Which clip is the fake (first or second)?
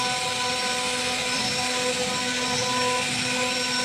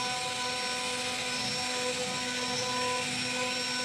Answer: first